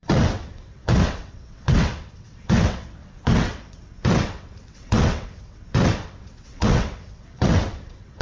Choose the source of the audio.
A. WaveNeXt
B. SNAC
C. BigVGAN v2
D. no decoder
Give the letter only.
A